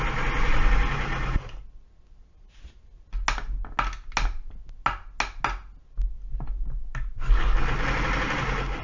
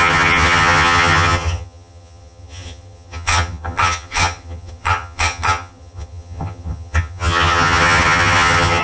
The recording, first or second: first